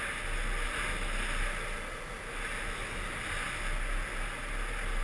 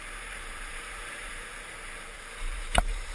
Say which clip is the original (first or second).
first